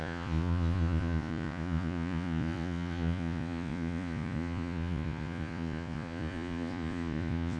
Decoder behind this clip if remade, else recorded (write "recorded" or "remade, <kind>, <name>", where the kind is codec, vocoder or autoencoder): remade, vocoder, Vocos